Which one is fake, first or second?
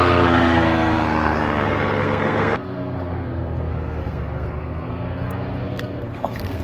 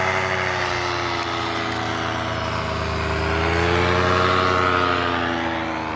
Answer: first